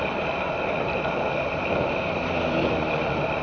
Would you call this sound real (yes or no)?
no